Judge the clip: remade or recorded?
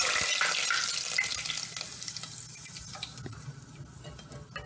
recorded